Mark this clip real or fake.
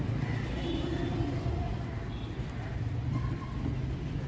real